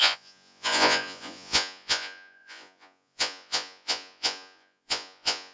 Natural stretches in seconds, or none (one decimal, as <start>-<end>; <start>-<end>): none